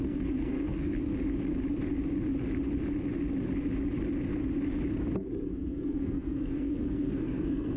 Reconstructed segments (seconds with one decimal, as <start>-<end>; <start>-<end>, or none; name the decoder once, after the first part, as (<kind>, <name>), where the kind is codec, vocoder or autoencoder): 0.0-0.9 (codec, SNAC); 5.5-7.8